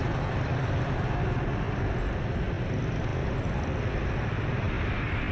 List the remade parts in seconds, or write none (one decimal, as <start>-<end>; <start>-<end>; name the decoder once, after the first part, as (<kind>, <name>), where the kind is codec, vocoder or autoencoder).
none